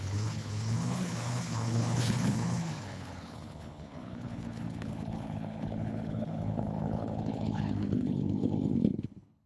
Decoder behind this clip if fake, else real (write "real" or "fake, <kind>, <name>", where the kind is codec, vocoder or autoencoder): fake, codec, HILCodec